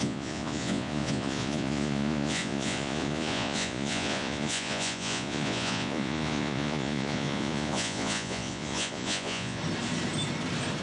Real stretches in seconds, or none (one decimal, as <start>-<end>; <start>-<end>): 9.6-10.8